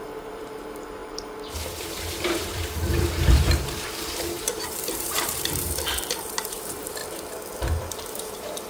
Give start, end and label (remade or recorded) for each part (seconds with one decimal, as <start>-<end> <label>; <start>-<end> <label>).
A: 0.0-7.0 remade; 7.0-8.0 recorded; 8.0-8.7 remade